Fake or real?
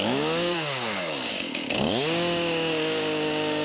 fake